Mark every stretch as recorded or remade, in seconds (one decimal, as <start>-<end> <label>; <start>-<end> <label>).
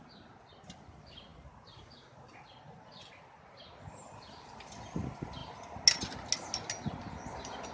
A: 0.0-7.7 recorded